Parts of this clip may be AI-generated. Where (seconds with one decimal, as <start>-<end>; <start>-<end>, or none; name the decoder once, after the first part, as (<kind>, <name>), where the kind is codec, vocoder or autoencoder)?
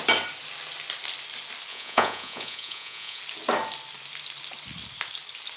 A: 1.7-3.2 (vocoder, Vocos)